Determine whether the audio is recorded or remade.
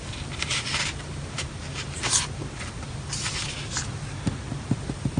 recorded